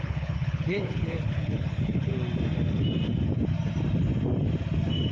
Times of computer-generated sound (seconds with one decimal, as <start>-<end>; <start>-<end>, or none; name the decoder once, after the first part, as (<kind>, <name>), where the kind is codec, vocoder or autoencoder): 0.0-2.1 (codec, HILCodec)